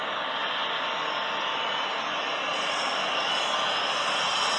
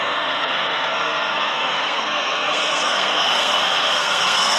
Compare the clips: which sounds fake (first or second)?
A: second